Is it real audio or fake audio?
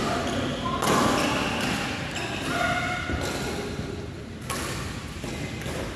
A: real